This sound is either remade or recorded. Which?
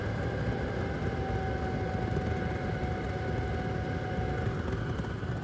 recorded